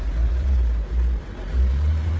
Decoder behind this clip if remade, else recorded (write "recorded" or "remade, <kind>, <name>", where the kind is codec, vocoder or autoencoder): remade, vocoder, BigVGAN v2